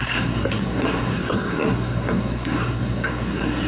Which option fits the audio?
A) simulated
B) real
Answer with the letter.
A